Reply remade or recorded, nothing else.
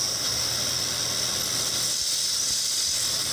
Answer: recorded